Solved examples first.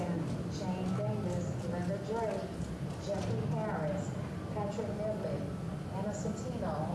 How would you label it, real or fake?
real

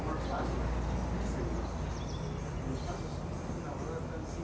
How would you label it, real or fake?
real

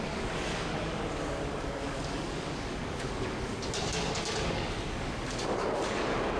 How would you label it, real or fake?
fake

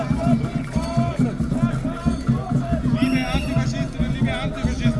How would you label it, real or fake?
real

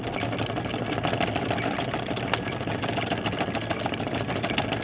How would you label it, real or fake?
real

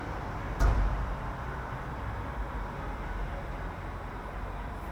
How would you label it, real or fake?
real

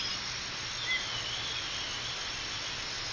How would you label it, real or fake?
real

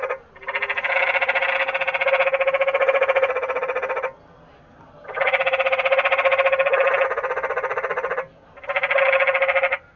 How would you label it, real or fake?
real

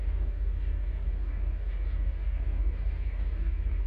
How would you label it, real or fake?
fake